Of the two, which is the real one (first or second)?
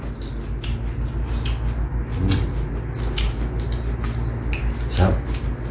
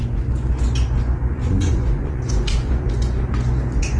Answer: first